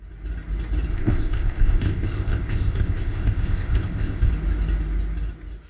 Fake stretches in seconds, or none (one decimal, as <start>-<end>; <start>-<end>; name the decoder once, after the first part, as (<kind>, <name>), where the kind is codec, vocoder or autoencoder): 0.9-4.3 (codec, ZipCodec)